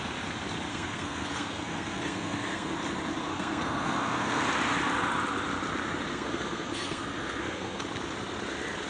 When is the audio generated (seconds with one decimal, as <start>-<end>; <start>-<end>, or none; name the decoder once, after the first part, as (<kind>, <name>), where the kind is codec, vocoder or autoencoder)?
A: 0.7-2.7 (codec, SNAC); 3.3-4.4; 6.1-7.8